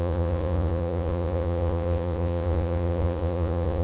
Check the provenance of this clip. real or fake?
fake